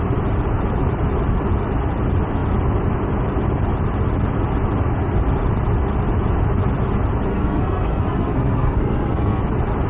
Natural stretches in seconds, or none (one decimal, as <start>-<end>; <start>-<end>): 0.0-7.3; 9.4-9.9